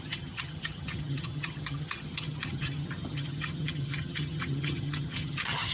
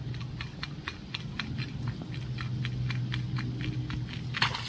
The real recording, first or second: second